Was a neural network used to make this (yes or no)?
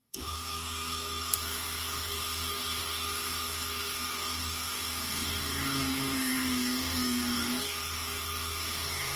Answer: yes